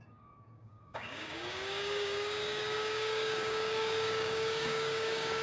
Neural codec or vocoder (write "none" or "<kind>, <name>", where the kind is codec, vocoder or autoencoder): codec, DAC